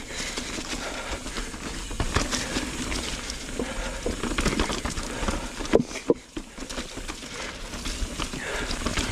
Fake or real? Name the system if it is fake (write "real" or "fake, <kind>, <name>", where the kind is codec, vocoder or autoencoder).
real